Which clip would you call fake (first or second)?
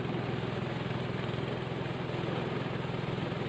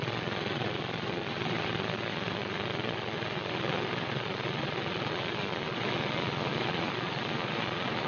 second